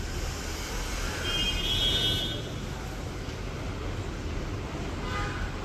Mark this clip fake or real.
real